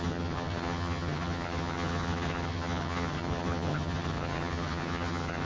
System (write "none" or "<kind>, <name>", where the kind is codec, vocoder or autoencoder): vocoder, HiFi-GAN